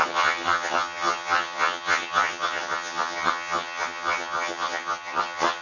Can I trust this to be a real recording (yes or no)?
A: no